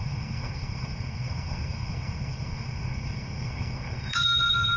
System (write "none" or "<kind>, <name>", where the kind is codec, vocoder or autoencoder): codec, SNAC